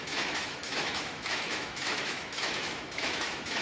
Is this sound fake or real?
fake